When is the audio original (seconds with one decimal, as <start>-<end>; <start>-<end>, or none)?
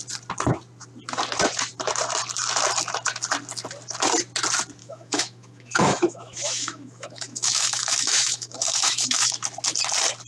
0.0-4.8; 9.3-10.3